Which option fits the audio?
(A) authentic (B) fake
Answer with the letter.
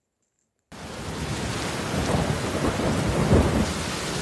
A